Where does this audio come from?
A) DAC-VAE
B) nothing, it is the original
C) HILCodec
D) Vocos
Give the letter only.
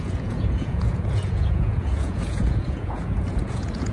D